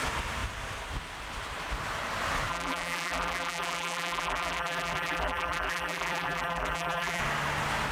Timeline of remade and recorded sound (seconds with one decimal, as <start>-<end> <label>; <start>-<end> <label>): 0.0-2.5 recorded; 2.5-7.2 remade; 7.2-7.9 recorded

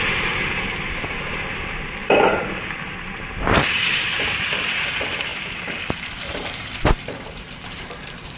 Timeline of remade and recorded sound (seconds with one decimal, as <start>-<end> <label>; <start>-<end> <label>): 0.0-8.4 remade

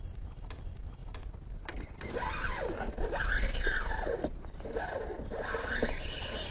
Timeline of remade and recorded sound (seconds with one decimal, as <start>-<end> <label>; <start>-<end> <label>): 0.0-1.0 remade; 1.0-1.6 recorded; 1.6-6.5 remade

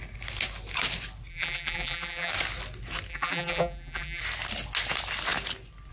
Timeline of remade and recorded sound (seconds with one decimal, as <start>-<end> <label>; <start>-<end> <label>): 0.0-1.3 recorded; 1.3-2.3 remade; 2.3-3.1 recorded; 3.1-4.2 remade; 4.2-5.9 recorded

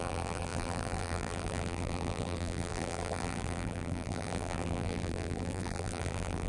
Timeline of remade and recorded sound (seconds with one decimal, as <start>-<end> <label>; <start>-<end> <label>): 0.0-6.5 remade

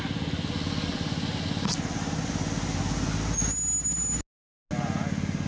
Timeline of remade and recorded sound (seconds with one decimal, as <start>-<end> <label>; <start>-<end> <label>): 0.0-5.5 recorded

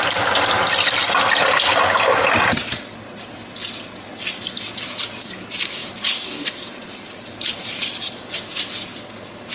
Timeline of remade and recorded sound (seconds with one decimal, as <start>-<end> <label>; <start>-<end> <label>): 0.0-5.8 recorded; 5.8-8.3 remade; 8.3-9.5 recorded